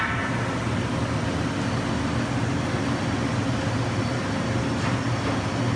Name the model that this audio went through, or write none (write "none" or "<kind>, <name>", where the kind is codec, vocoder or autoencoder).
none